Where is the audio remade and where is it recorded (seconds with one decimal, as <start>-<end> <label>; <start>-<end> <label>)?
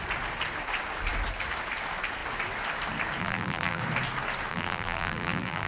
0.0-3.2 recorded; 3.2-3.8 remade; 3.8-4.5 recorded; 4.5-5.7 remade